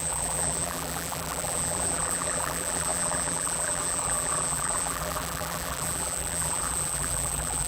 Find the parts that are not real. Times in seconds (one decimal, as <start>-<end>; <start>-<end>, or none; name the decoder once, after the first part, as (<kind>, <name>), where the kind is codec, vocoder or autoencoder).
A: 0.0-7.7 (vocoder, BigVGAN v2)